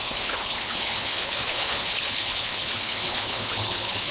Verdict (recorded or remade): remade